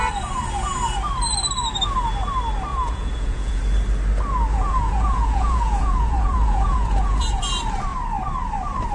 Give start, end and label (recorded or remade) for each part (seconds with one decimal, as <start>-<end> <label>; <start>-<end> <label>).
0.0-2.7 recorded; 2.7-3.6 remade; 3.6-4.5 recorded; 4.5-7.4 remade; 7.4-8.9 recorded